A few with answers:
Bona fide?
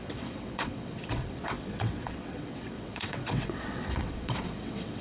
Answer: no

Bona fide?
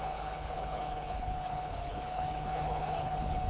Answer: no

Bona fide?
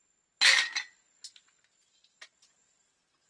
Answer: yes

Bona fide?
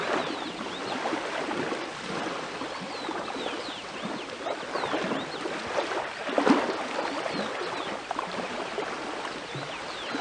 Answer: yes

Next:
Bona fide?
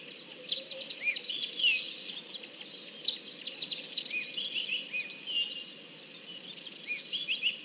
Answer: yes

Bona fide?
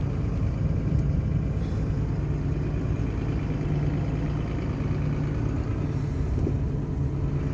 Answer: yes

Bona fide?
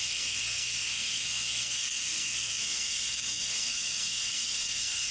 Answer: no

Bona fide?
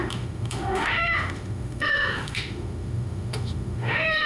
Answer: no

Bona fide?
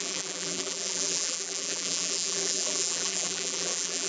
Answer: no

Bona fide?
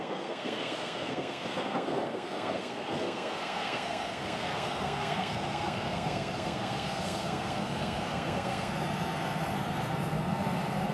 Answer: no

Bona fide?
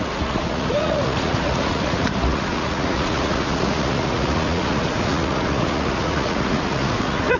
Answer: no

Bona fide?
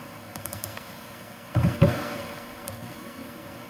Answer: no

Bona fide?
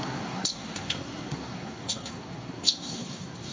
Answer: no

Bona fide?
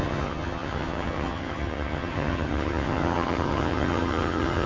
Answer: no